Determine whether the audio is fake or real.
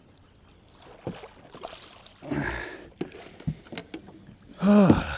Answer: real